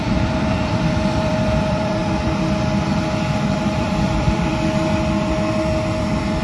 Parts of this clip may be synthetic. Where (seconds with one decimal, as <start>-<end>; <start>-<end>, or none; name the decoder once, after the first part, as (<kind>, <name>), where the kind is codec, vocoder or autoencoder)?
0.0-2.0 (vocoder, BigVGAN v2); 3.6-4.5; 6.0-6.4